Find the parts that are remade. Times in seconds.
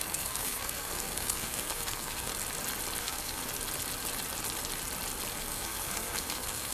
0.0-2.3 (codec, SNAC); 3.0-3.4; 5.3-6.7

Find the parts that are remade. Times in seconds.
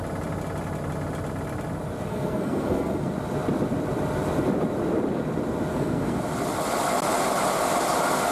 2.1-3.1 (codec, SNAC); 5.7-6.2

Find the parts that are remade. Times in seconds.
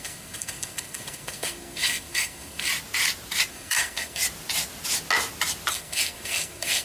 0.0-2.7 (codec, SNAC); 3.5-4.2; 5.7-6.8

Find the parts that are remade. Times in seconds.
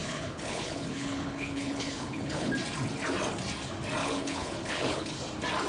0.0-2.5 (codec, HILCodec); 4.0-5.1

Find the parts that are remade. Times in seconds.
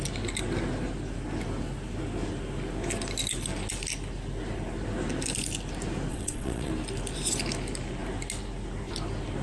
6.1-6.7 (vocoder, WaveNeXt)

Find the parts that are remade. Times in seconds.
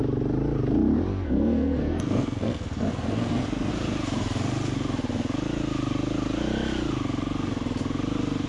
1.1-3.7 (codec, SNAC)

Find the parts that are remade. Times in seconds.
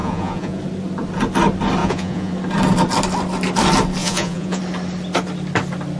0.0-0.6 (vocoder, Vocos); 1.8-2.3; 4.0-4.6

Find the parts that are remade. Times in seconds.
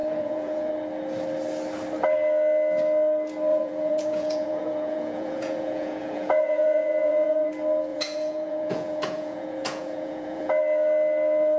0.0-0.7 (vocoder, Vocos); 3.5-7.5; 7.9-10.5